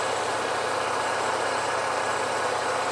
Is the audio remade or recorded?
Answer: remade